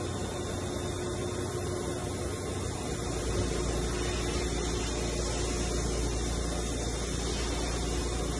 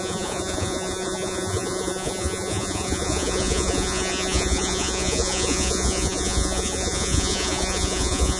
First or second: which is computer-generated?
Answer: second